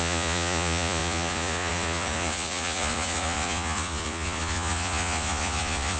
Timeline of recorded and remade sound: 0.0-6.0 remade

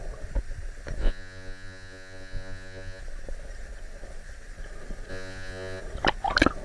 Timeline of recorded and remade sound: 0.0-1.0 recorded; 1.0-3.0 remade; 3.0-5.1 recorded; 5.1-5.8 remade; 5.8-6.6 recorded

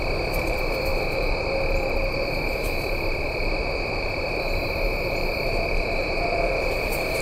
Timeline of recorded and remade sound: 0.0-7.2 remade